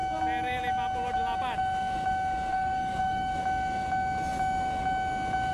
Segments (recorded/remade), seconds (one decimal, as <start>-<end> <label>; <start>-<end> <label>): 0.0-2.5 recorded; 2.5-3.4 remade; 3.4-5.5 recorded